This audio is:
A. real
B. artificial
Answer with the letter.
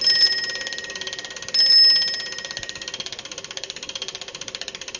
A